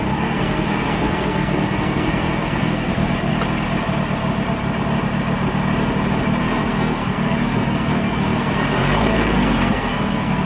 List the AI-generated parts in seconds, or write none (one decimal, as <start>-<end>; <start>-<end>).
0.0-3.3; 6.4-10.5